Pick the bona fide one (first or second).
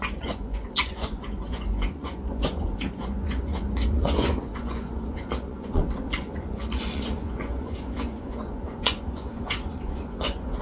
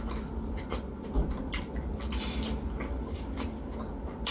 second